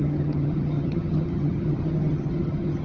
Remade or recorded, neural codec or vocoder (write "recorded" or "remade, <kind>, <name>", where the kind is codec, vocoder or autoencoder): remade, vocoder, HiFi-GAN